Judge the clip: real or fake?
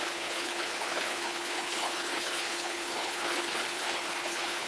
fake